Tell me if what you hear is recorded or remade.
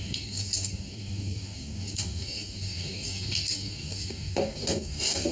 remade